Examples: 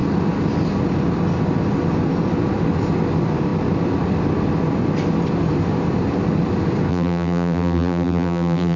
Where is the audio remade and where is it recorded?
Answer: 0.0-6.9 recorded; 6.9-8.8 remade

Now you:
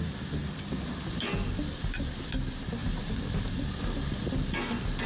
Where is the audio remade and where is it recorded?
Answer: 0.0-0.4 recorded; 0.4-1.1 remade; 1.1-2.8 recorded; 2.8-3.7 remade; 3.7-5.1 recorded